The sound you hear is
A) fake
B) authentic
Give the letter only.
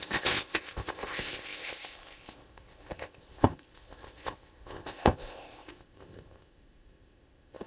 A